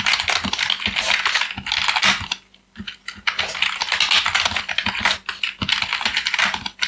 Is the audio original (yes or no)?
yes